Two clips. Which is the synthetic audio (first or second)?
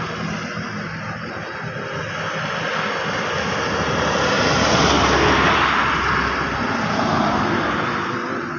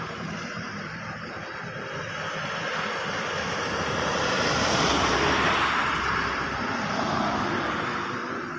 second